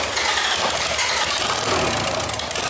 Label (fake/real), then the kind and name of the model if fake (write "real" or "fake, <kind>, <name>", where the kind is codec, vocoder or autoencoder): real